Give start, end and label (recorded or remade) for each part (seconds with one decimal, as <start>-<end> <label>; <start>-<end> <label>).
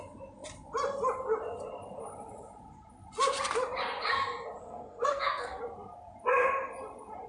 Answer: 0.0-4.6 recorded; 4.6-5.6 remade; 5.6-7.3 recorded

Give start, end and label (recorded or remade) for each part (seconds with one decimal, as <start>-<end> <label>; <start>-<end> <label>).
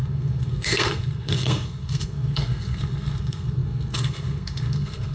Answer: 0.0-5.1 remade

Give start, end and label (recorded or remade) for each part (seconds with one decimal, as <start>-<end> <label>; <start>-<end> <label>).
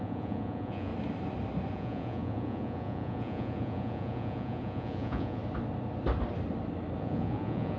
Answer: 0.0-0.9 remade; 0.9-1.7 recorded; 1.7-5.4 remade; 5.4-7.0 recorded; 7.0-7.8 remade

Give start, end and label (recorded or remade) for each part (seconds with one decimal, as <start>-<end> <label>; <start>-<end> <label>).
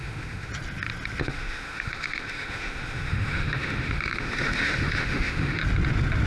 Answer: 0.0-0.5 remade; 0.5-1.2 recorded; 1.2-5.6 remade; 5.6-6.3 recorded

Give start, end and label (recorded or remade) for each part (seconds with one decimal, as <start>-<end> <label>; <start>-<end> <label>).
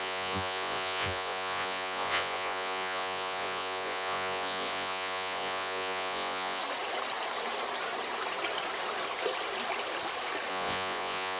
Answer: 0.0-6.6 remade; 6.6-10.5 recorded; 10.5-11.4 remade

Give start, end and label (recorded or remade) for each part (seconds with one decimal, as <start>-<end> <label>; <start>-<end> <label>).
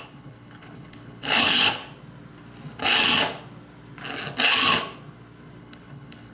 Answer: 0.0-1.8 remade; 1.8-5.6 recorded; 5.6-6.3 remade